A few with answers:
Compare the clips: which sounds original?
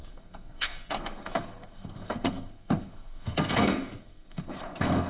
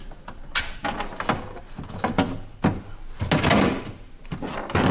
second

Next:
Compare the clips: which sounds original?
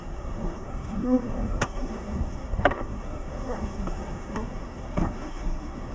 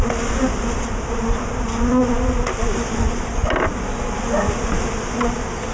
second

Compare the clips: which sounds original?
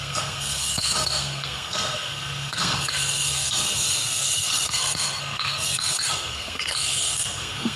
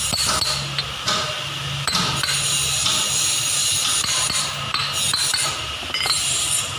second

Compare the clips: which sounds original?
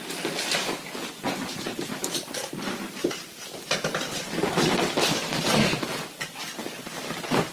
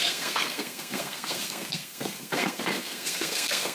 first